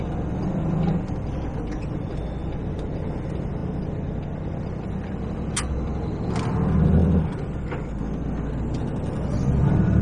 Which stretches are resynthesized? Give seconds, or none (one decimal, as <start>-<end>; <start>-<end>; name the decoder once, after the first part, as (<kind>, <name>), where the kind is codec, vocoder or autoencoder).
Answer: none